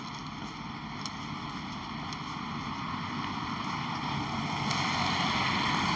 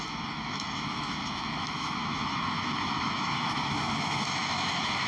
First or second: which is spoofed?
second